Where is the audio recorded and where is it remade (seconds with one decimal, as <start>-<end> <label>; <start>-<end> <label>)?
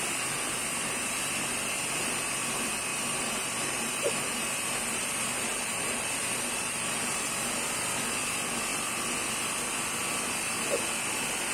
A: 0.0-2.9 recorded; 2.9-7.3 remade; 7.3-11.5 recorded